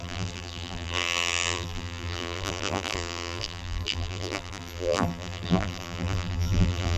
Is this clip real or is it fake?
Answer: fake